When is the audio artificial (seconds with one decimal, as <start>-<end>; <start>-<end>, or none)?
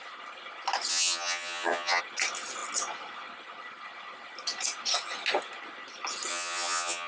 0.9-2.0; 6.3-7.1